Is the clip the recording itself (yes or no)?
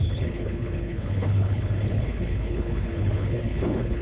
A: no